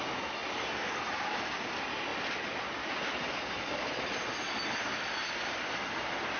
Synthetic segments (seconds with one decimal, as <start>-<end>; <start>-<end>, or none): none